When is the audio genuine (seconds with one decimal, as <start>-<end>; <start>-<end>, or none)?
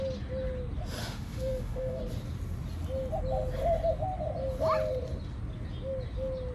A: 0.0-1.0; 2.0-6.5